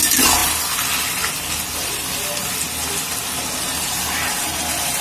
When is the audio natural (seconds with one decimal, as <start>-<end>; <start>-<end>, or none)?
0.0-5.0